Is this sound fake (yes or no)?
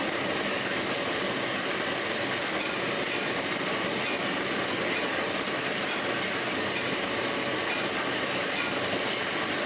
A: no